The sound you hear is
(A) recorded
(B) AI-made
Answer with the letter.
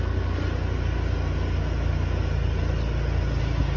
A